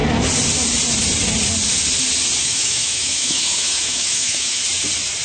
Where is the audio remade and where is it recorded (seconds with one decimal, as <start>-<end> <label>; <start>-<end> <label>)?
0.0-2.4 recorded; 2.4-4.6 remade; 4.6-5.2 recorded

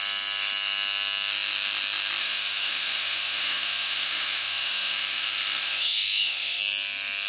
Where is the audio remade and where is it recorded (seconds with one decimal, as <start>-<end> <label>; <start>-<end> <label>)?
0.0-2.2 recorded; 2.2-6.6 remade; 6.6-7.3 recorded

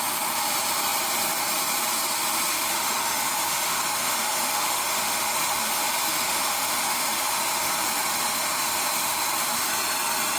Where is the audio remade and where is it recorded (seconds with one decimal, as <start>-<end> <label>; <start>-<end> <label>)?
0.0-2.5 recorded; 2.5-7.7 remade; 7.7-8.1 recorded; 8.1-9.7 remade; 9.7-10.4 recorded

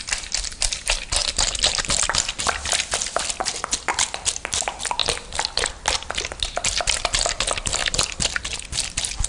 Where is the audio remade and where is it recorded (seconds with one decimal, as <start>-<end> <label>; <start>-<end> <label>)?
0.0-9.3 recorded

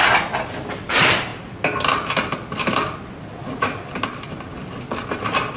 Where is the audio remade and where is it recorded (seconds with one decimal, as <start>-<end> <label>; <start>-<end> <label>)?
0.0-5.6 recorded

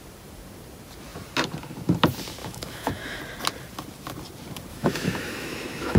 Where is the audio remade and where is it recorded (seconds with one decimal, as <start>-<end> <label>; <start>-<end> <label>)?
0.0-2.4 recorded; 2.4-3.2 remade; 3.2-4.7 recorded; 4.7-6.0 remade

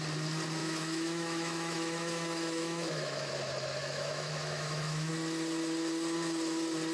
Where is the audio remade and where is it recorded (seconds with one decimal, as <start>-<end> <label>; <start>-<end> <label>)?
0.0-0.6 recorded; 0.6-3.3 remade; 3.3-3.8 recorded; 3.8-5.1 remade; 5.1-6.9 recorded